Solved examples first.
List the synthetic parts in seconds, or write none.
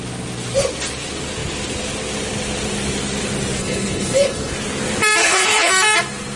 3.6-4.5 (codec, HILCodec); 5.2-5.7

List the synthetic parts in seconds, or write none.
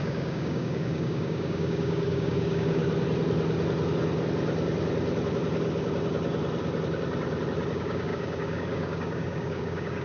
0.0-2.8 (codec, DAC); 7.7-10.0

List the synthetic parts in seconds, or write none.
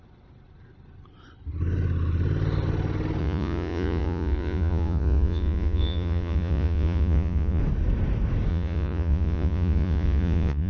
3.2-7.6 (vocoder, Vocos); 8.5-10.7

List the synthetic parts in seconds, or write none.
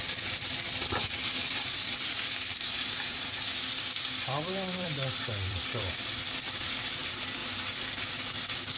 1.3-6.4 (vocoder, BigVGAN v2); 7.4-8.1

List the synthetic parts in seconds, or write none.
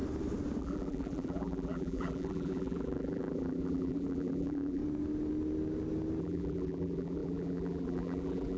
0.6-4.8 (vocoder, BigVGAN v2); 6.2-8.6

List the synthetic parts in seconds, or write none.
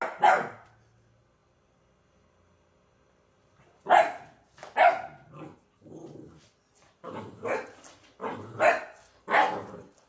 none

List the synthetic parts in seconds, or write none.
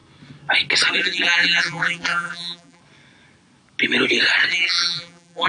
0.9-2.8 (vocoder, BigVGAN v2); 4.5-5.5